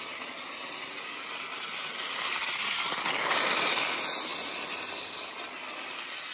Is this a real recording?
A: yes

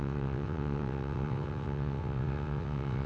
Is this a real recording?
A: no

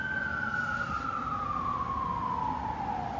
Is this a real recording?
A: yes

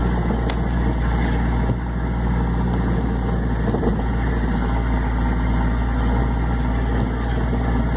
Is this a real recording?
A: yes